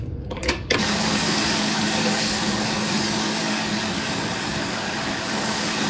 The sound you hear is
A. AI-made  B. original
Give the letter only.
A